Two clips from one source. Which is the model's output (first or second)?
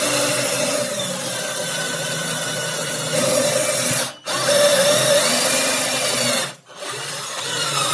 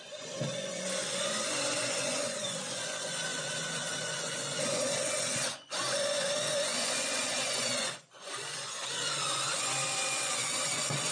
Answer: second